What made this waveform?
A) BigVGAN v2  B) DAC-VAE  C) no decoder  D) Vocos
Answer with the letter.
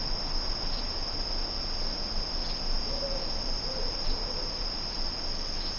C